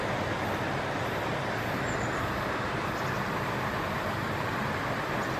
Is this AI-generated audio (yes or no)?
no